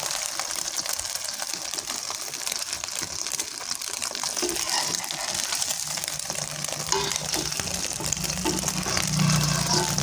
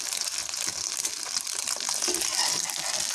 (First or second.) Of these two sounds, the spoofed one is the first